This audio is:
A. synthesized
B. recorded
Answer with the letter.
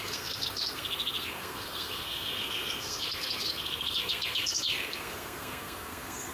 A